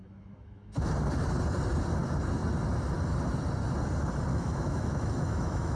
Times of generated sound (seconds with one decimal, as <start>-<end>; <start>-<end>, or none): 0.0-0.9; 4.3-5.8